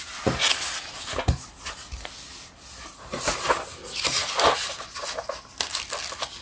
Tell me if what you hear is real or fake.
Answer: real